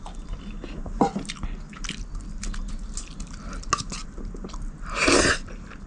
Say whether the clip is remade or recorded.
recorded